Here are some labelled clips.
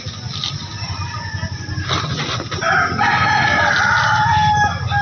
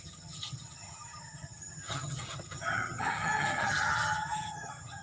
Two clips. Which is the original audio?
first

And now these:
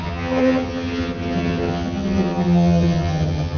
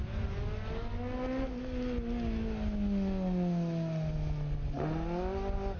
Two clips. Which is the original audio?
second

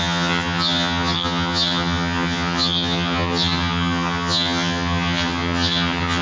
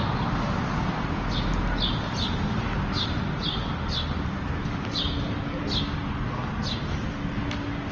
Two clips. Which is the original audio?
second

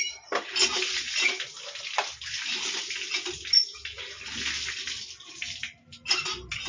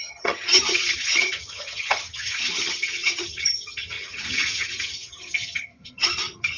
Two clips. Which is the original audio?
first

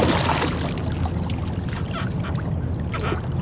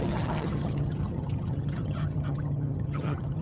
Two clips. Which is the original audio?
first